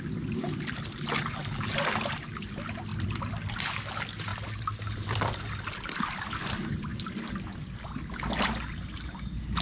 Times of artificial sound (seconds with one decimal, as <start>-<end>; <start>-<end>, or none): 1.4-2.1; 2.9-3.6; 4.3-6.5